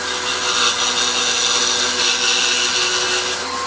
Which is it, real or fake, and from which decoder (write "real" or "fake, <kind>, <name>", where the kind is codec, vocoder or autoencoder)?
real